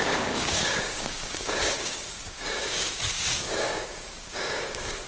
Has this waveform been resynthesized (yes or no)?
yes